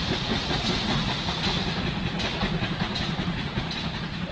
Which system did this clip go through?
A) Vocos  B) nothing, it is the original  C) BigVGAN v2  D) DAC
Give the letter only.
A